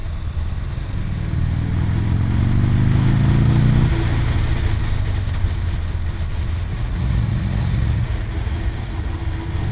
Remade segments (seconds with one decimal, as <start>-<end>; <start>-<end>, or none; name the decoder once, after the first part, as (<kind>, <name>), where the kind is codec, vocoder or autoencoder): 6.7-9.1 (vocoder, Vocos)